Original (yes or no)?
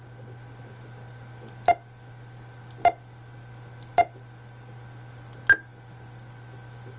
yes